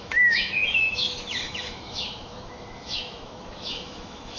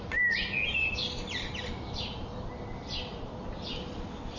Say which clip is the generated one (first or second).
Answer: first